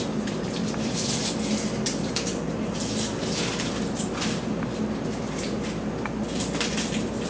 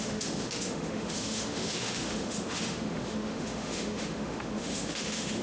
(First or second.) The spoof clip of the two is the second